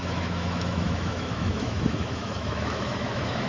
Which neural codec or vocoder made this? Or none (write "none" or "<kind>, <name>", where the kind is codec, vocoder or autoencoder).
autoencoder, DAC-VAE